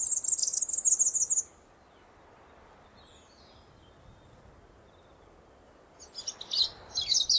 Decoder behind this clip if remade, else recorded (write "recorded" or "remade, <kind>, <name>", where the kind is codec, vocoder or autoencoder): recorded